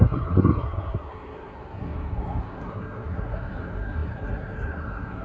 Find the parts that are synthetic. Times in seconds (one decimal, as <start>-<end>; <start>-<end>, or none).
0.0-5.2